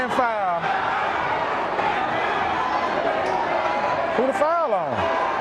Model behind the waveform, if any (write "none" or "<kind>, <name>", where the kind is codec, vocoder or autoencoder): none